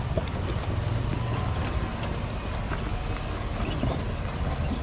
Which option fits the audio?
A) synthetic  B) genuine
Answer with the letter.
B